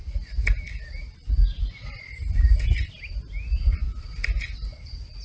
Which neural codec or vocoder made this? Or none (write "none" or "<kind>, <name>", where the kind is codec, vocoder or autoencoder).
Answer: none